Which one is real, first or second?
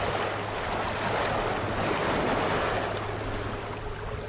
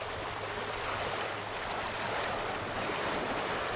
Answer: first